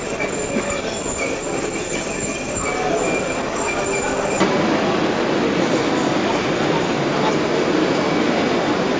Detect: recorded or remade recorded